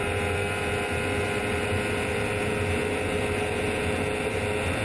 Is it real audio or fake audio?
real